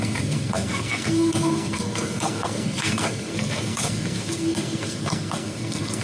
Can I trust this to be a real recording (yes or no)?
no